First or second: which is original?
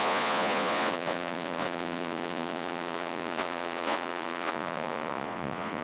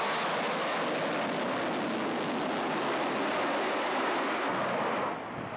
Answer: second